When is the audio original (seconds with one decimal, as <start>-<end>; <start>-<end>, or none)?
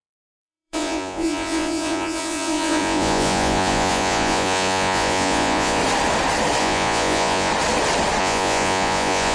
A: 5.8-6.6; 7.5-8.2